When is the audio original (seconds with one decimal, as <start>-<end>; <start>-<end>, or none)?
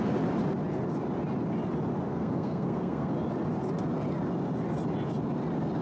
0.0-2.1; 3.1-5.8